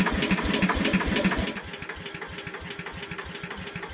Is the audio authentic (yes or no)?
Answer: yes